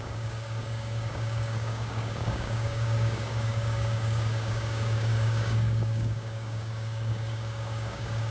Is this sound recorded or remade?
remade